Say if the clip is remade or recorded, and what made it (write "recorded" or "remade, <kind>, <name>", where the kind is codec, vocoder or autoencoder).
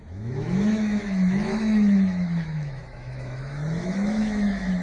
remade, autoencoder, DAC-VAE